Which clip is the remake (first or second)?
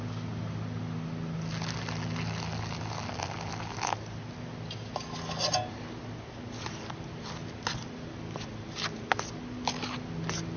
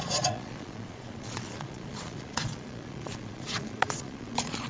second